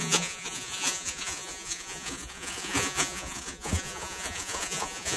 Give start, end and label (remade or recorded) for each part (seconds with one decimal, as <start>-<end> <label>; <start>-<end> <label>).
0.0-5.2 remade

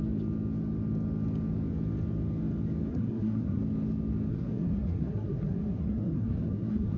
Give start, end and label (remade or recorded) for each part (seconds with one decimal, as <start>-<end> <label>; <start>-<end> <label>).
0.0-2.9 recorded; 2.9-3.6 remade; 3.6-4.3 recorded; 4.3-7.0 remade